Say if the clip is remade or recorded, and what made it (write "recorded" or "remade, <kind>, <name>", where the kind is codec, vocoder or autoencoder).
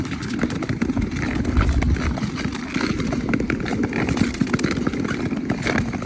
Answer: recorded